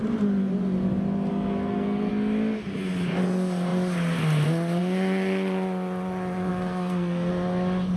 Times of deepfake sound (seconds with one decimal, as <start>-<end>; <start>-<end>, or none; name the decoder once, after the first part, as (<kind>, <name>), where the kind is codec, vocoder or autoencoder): 1.3-2.1 (codec, SNAC); 6.5-7.3